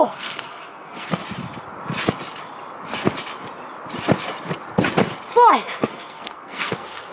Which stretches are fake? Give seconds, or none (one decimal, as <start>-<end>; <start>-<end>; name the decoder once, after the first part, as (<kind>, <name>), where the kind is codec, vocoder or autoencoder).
0.0-1.2 (codec, SNAC); 5.5-7.1